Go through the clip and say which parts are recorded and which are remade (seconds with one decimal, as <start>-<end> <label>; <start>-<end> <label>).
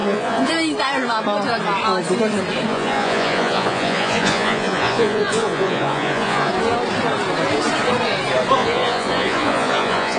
0.0-0.5 remade; 0.5-2.7 recorded; 2.7-6.5 remade; 6.5-8.6 recorded; 8.6-10.2 remade